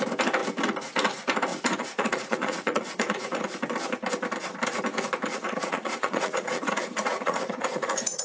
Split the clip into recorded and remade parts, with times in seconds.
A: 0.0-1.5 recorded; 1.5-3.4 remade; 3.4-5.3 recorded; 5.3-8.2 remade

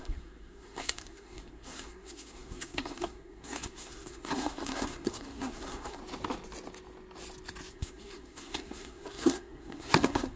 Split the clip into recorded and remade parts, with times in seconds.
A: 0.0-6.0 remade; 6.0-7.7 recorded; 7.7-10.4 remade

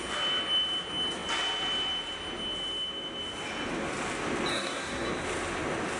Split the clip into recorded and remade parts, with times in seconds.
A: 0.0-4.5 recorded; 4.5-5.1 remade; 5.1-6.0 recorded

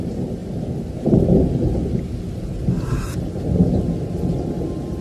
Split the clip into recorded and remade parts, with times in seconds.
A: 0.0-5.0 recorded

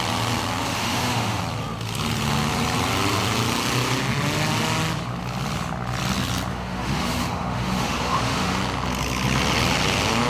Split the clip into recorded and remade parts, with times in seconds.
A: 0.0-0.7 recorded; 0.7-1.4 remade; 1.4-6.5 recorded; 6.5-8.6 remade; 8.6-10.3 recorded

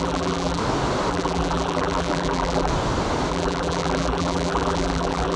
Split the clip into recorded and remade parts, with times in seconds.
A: 0.0-0.6 remade; 0.6-1.1 recorded; 1.1-2.7 remade; 2.7-3.3 recorded; 3.3-5.4 remade

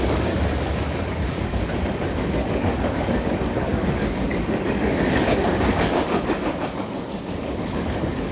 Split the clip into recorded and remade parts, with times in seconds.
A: 0.0-8.3 remade

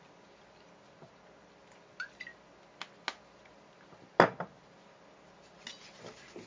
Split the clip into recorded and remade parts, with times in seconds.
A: 0.0-6.5 recorded